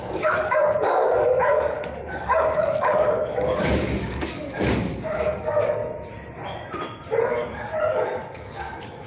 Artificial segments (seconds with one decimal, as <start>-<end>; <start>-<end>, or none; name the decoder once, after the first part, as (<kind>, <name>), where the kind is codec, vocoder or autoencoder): 0.0-5.8 (codec, DAC); 7.2-9.1